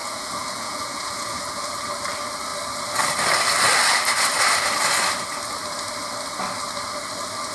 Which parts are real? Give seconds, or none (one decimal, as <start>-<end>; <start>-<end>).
1.7-7.5